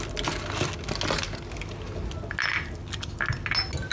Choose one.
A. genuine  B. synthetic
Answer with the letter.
A